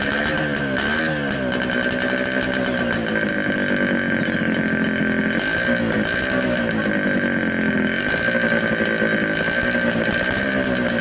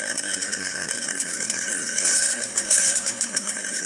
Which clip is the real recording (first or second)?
first